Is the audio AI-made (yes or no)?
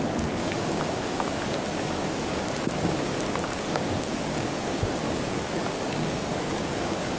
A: yes